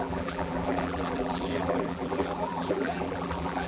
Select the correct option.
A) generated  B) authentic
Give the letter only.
A